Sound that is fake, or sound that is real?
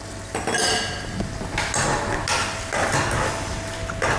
real